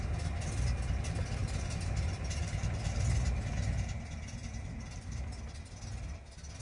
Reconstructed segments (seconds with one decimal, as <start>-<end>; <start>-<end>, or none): 1.4-5.4